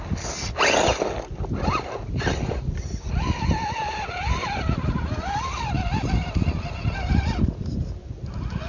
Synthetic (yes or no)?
no